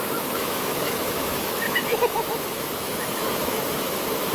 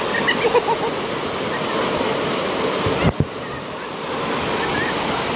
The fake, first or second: first